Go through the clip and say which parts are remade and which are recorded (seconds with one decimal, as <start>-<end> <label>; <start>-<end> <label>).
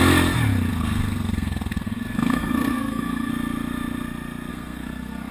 0.0-0.7 recorded; 0.7-3.3 remade; 3.3-4.5 recorded; 4.5-5.3 remade